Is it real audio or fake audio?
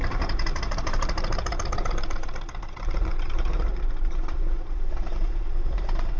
fake